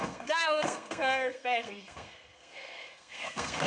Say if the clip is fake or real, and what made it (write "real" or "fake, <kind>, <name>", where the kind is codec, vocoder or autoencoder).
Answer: fake, codec, SNAC